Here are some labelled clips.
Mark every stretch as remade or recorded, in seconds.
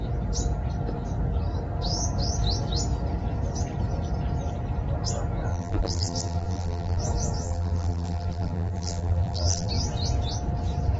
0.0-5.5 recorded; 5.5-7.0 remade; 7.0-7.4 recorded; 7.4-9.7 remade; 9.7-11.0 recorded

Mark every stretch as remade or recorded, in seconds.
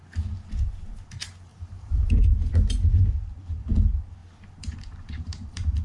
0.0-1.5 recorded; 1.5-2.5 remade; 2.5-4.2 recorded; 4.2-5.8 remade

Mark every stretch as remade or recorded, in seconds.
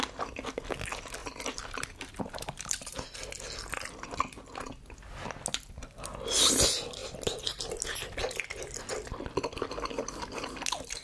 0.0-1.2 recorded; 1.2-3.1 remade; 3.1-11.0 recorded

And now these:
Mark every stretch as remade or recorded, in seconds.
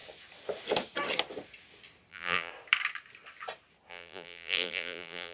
0.0-2.1 recorded; 2.1-2.5 remade; 2.5-3.9 recorded; 3.9-5.3 remade